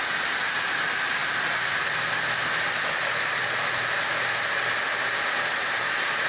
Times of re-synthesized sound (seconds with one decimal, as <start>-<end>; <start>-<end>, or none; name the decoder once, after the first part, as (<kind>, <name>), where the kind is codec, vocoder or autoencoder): none